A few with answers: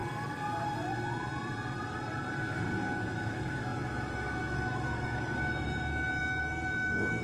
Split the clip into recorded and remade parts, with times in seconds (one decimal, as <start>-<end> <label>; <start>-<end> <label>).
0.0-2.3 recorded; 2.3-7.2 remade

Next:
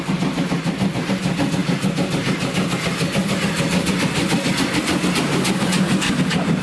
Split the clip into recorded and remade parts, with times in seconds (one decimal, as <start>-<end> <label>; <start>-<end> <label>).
0.0-6.6 recorded

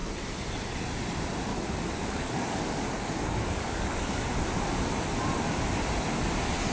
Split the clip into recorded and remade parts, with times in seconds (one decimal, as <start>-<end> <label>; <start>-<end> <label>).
0.0-1.5 recorded; 1.5-4.3 remade; 4.3-6.7 recorded

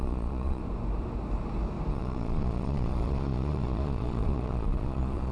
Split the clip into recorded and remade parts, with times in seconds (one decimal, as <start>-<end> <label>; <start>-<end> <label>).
0.0-0.6 remade; 0.6-1.9 recorded; 1.9-5.3 remade

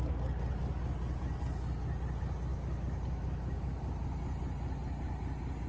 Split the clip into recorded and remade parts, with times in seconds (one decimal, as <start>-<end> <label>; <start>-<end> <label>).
0.0-2.5 recorded; 2.5-3.9 remade; 3.9-5.7 recorded

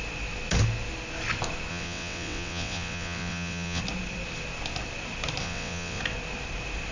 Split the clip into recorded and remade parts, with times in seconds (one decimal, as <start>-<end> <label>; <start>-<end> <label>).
0.0-1.7 recorded; 1.7-3.8 remade; 3.8-5.4 recorded; 5.4-6.0 remade; 6.0-6.9 recorded

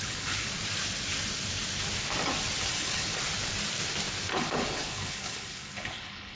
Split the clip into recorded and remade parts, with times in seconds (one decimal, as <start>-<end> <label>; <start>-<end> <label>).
0.0-0.5 remade; 0.5-2.7 recorded; 2.7-3.1 remade; 3.1-4.3 recorded; 4.3-6.4 remade

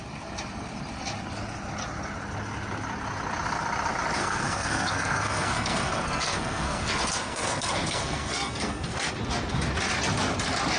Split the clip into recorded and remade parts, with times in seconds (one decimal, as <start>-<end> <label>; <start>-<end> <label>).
0.0-4.2 recorded; 4.2-9.1 remade; 9.1-10.8 recorded